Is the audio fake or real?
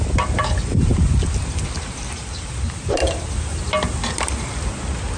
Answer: real